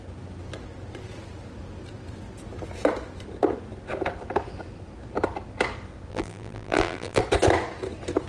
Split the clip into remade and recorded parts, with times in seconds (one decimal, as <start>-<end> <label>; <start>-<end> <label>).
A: 0.0-6.1 recorded; 6.1-7.2 remade; 7.2-8.3 recorded